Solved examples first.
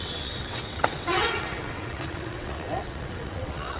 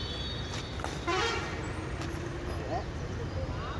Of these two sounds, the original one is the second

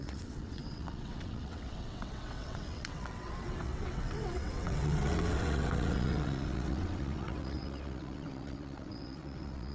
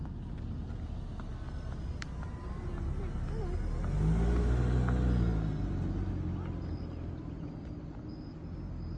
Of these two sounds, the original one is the second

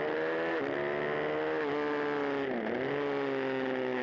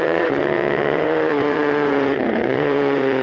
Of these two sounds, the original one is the first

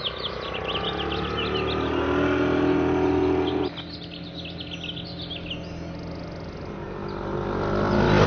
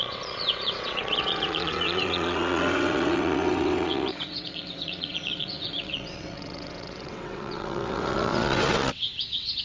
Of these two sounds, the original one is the first